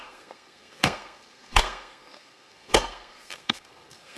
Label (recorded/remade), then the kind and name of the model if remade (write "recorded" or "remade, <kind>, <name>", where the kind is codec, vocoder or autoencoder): remade, codec, SNAC